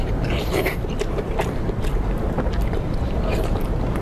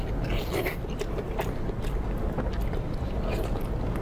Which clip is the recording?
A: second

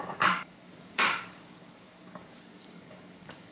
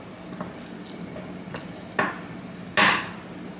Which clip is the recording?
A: second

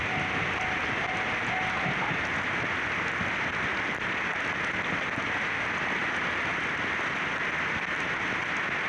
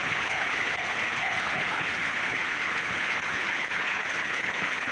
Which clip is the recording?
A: first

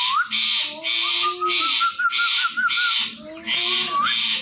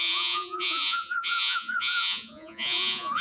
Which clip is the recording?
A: first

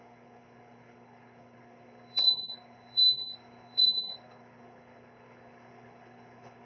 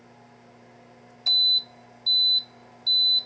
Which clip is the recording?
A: second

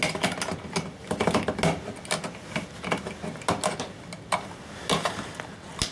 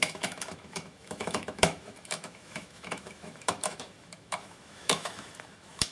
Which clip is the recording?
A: first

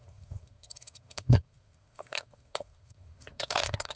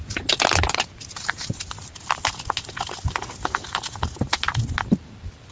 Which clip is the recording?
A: second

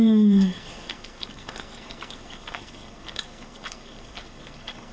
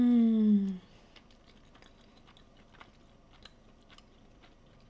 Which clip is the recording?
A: second